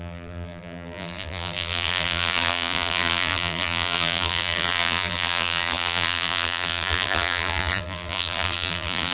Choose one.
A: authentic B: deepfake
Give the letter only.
B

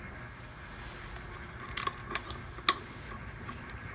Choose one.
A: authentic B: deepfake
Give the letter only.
A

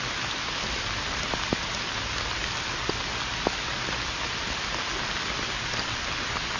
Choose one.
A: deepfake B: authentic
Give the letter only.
B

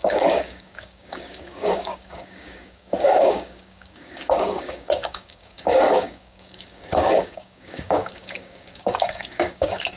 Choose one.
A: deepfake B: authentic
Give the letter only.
A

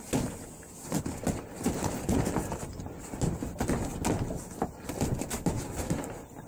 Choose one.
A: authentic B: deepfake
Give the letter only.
A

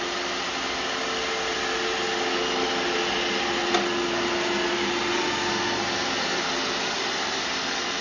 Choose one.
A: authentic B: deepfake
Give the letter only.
A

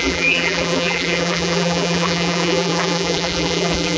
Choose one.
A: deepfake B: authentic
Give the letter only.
A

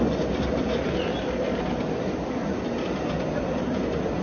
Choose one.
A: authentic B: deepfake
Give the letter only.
A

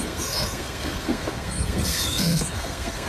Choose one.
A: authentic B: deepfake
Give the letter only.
B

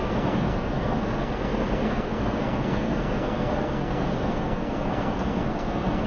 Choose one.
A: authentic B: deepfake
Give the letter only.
B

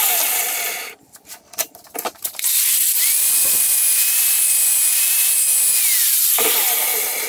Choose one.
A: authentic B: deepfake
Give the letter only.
B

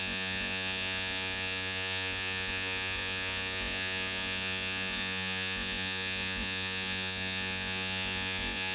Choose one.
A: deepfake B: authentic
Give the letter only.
A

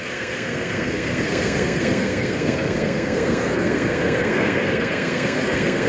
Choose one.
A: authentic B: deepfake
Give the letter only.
B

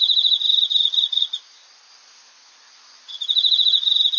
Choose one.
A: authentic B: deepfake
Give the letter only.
A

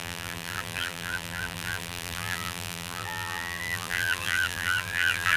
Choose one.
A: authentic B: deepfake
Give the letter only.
B